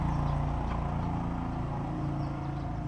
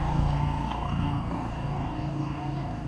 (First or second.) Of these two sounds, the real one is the first